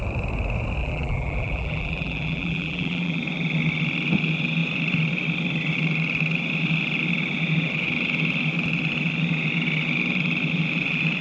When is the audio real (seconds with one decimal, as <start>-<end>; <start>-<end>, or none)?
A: 0.0-0.8; 3.2-11.2